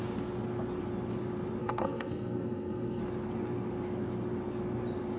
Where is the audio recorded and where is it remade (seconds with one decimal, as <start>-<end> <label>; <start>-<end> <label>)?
0.0-1.6 recorded; 1.6-3.0 remade; 3.0-5.2 recorded